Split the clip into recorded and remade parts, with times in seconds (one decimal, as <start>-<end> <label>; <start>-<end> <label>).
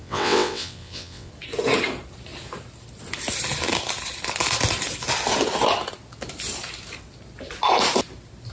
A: 0.0-1.3 remade; 1.3-8.5 recorded